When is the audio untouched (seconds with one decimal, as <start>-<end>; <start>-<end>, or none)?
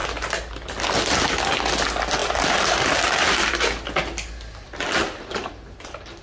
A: 0.0-6.2